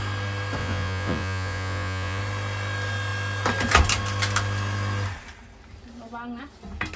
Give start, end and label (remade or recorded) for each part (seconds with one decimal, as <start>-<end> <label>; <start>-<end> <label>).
0.0-0.6 recorded; 0.6-2.2 remade; 2.2-7.0 recorded